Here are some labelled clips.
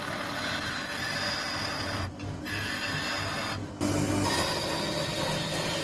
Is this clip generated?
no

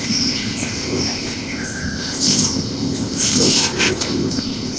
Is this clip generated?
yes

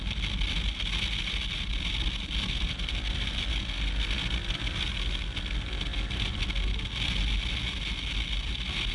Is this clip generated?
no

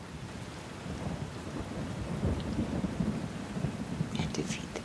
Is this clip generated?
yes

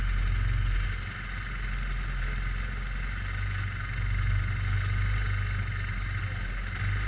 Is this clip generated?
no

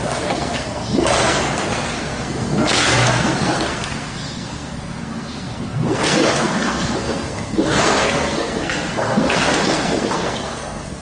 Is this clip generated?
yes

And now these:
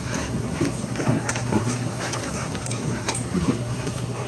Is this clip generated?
yes